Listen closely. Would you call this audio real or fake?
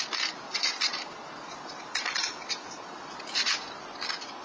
real